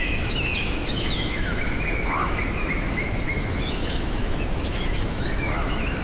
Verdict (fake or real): fake